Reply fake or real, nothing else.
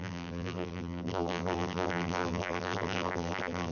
fake